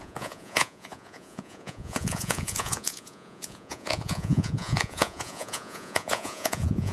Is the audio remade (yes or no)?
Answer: yes